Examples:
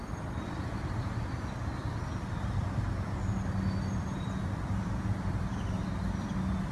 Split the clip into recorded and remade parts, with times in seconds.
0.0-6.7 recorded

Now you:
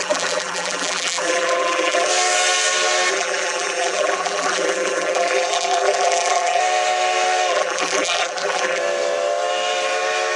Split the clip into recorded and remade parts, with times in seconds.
0.0-2.1 remade; 2.1-3.1 recorded; 3.1-6.6 remade; 6.6-7.5 recorded; 7.5-8.8 remade; 8.8-10.4 recorded

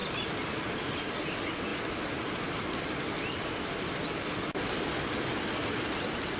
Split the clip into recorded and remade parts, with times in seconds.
0.0-6.4 recorded

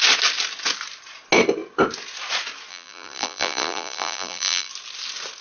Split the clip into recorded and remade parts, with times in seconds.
0.0-2.7 recorded; 2.7-4.7 remade; 4.7-5.4 recorded